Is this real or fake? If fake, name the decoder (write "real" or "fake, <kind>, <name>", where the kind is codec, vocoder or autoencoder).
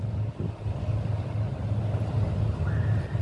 real